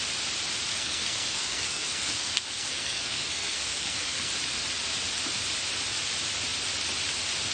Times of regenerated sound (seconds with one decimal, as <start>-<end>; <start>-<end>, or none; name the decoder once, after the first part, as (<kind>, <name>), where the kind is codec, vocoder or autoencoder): 0.7-4.3 (codec, SNAC)